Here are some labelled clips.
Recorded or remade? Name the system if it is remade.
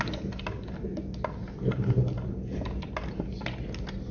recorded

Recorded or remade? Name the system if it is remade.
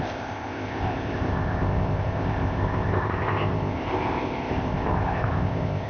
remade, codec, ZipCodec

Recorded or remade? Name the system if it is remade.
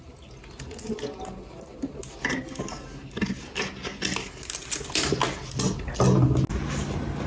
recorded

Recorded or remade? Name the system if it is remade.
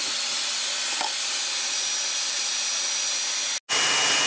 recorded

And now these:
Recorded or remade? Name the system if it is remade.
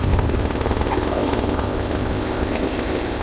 remade, codec, ZipCodec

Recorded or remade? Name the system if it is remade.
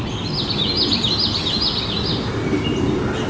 recorded